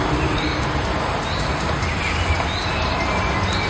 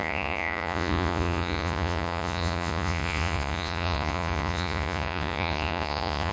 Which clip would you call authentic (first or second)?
first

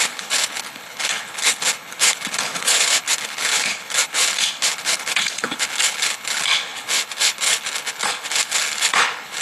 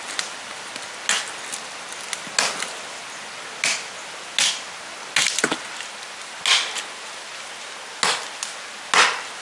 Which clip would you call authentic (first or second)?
second